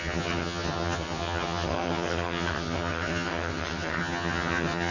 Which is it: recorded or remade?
remade